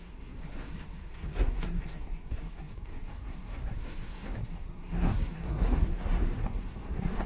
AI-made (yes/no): yes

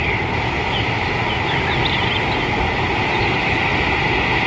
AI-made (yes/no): no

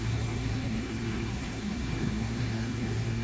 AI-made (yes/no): yes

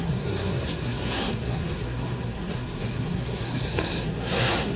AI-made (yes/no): yes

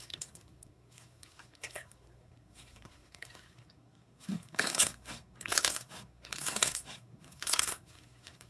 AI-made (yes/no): yes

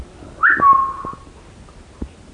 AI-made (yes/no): no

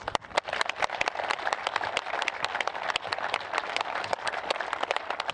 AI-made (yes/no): no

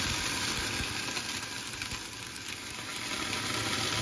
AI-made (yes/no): no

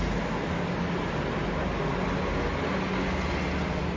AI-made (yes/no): no